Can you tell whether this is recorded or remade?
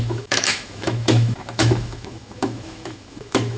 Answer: remade